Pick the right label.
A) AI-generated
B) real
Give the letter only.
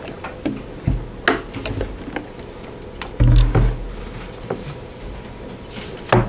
B